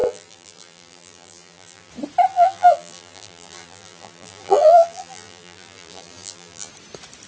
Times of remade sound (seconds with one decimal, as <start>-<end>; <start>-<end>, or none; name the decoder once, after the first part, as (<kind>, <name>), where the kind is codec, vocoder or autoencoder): 0.0-1.9 (vocoder, BigVGAN v2); 2.3-6.7